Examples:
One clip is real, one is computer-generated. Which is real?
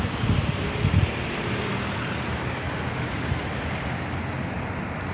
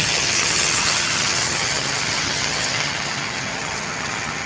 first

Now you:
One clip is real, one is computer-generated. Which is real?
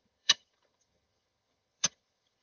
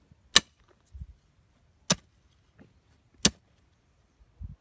second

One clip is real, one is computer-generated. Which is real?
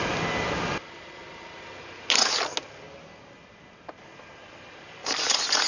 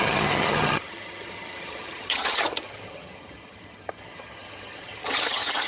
first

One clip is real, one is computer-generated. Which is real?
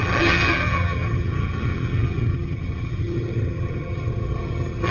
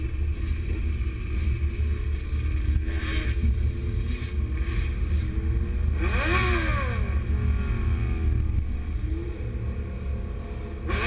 second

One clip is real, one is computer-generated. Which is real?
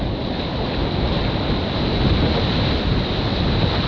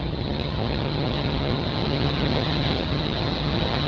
first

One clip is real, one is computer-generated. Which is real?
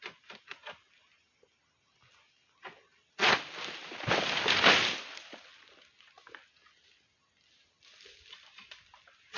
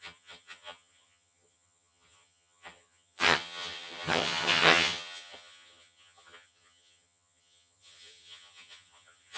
first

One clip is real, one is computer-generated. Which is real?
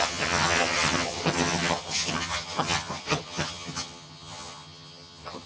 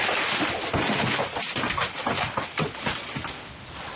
second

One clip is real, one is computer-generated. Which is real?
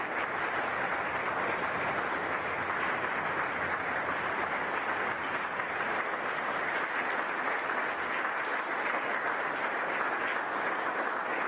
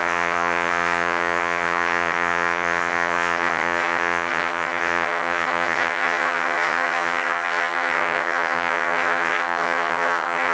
first